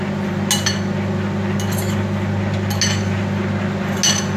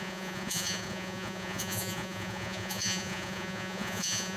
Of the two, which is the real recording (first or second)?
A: first